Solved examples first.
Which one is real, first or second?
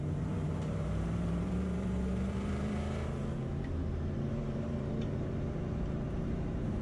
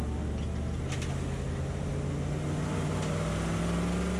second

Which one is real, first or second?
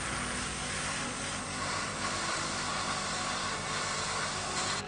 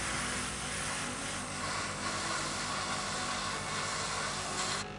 second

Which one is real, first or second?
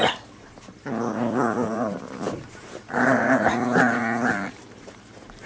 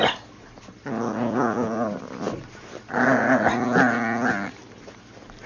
second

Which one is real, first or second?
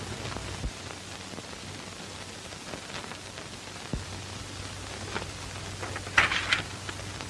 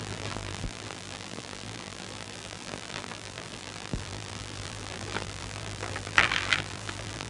first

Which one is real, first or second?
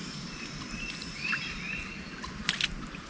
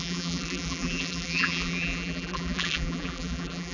first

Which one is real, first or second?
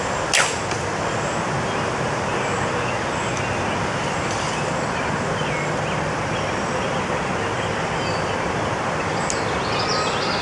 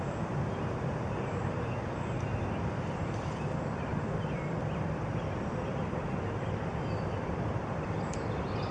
first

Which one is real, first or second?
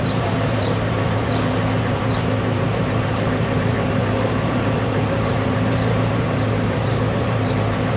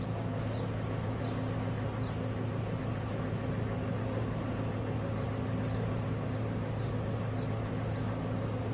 second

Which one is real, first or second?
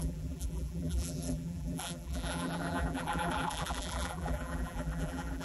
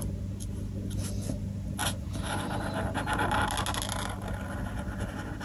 second